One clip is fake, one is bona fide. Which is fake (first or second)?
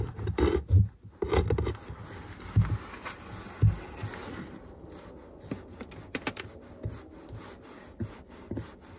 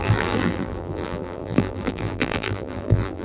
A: second